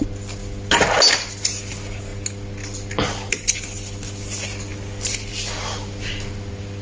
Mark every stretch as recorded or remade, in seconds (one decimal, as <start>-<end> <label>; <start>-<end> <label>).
0.0-6.8 recorded